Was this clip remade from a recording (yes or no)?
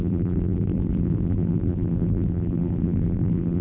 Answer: yes